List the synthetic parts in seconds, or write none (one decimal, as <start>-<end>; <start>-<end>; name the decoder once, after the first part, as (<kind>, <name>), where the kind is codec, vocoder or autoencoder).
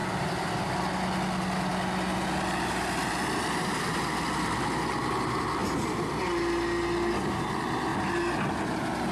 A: 0.0-0.8 (vocoder, BigVGAN v2); 7.9-8.5